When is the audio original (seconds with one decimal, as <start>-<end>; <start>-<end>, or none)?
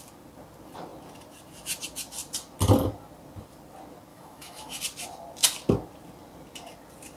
0.0-4.1; 4.8-7.2